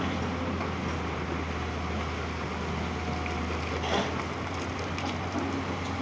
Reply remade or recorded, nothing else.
recorded